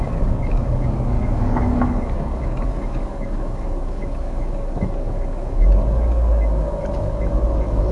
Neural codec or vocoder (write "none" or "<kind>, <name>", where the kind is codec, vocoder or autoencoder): codec, DAC